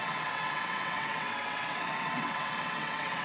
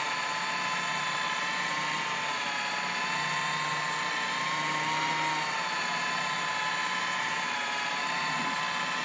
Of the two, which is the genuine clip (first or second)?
second